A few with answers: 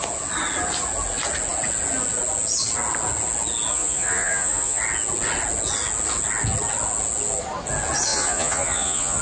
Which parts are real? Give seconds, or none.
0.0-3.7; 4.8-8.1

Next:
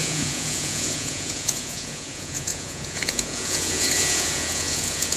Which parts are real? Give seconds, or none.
none

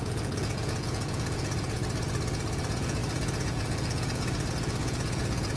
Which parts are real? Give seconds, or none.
1.8-2.6

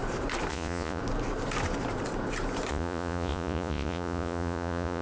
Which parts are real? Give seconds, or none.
0.0-0.5; 1.0-2.7

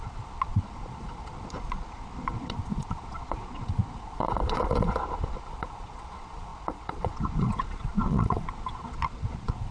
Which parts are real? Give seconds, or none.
none

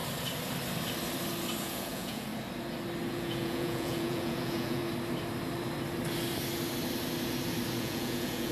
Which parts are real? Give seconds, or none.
0.0-1.6; 2.3-3.1; 4.8-7.8

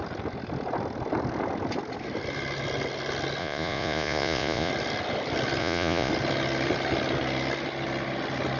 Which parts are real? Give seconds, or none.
0.0-3.4; 4.7-5.6; 6.1-8.6